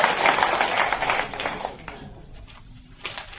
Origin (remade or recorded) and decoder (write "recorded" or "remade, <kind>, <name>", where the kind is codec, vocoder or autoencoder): recorded